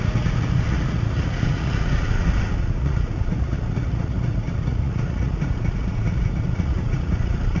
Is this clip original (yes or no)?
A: no